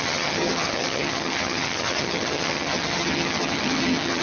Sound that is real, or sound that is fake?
fake